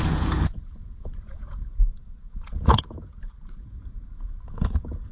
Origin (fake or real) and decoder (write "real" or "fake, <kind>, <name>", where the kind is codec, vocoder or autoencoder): fake, vocoder, Vocos